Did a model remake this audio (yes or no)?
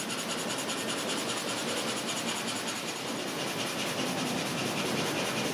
no